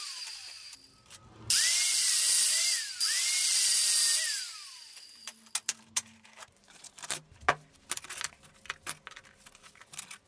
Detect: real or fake real